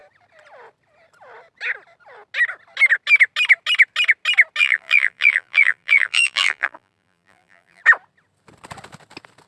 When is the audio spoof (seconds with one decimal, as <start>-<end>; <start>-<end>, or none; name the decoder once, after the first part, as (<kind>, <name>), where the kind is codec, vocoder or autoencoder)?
4.6-7.8 (vocoder, BigVGAN v2)